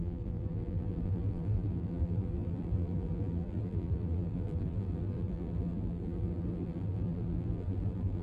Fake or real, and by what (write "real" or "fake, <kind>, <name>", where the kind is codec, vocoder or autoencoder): fake, vocoder, BigVGAN v2